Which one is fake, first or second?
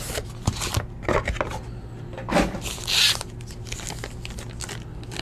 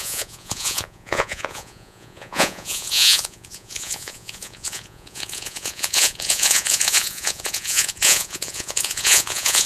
second